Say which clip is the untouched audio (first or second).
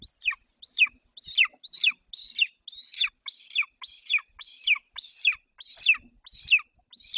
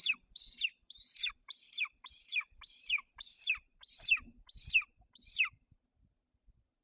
first